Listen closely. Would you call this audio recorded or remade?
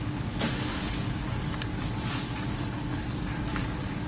remade